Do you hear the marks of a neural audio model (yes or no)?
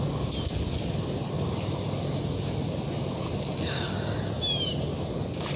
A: no